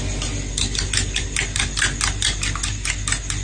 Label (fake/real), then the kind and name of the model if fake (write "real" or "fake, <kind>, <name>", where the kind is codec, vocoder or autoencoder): real